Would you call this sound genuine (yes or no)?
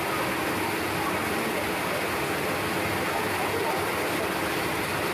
yes